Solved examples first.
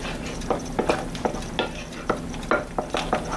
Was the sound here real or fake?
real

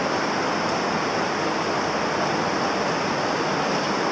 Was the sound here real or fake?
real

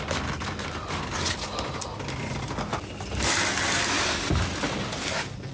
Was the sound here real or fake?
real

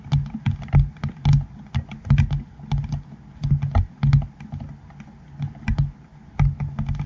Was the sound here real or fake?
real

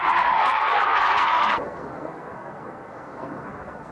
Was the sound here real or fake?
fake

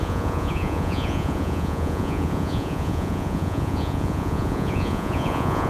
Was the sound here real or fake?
fake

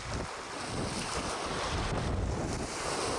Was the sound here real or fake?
real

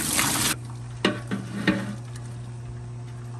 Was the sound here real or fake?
real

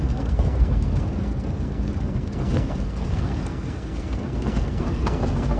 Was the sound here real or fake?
fake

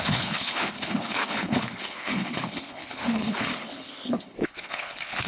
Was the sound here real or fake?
fake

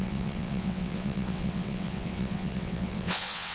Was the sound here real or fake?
fake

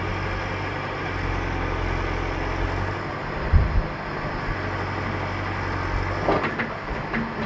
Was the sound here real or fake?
real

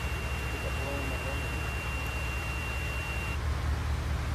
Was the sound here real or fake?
real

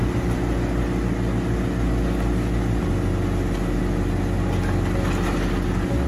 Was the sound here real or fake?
real